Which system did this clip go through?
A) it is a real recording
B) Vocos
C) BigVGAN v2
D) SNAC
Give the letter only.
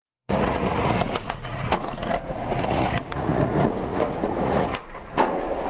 B